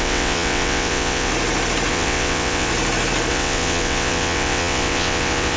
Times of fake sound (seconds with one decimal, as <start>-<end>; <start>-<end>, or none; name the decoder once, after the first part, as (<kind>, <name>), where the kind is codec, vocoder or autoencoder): 0.0-1.3 (vocoder, WaveNeXt); 1.9-2.7; 3.3-5.6